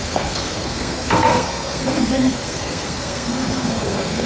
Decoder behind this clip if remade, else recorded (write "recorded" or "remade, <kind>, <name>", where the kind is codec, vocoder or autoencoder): remade, codec, SNAC